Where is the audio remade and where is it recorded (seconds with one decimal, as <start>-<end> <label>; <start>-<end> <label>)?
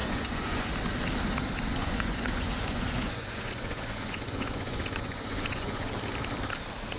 0.0-0.7 remade; 0.7-1.7 recorded; 1.7-5.9 remade; 5.9-7.0 recorded